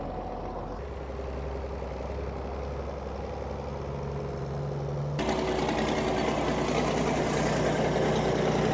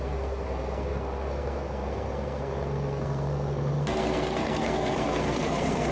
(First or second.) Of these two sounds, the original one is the first